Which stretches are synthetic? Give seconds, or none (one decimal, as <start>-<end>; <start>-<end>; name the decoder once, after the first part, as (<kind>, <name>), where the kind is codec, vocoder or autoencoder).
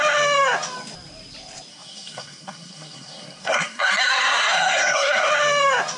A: 1.7-5.3 (codec, SNAC)